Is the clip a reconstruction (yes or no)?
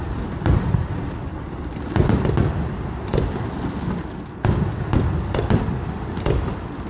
no